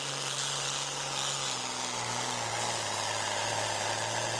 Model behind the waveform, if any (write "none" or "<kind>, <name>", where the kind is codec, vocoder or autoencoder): none